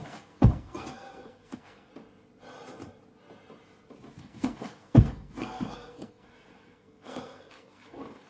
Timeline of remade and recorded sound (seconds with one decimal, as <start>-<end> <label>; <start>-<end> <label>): 0.0-1.9 remade; 1.9-4.2 recorded; 4.2-8.3 remade